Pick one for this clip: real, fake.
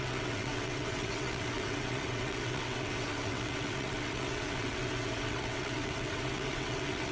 fake